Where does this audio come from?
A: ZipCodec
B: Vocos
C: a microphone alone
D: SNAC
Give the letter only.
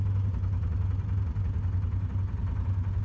C